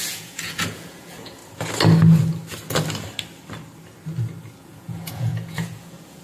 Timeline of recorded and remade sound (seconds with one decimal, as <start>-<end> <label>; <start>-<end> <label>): 0.0-1.4 remade; 1.4-4.6 recorded; 4.6-6.2 remade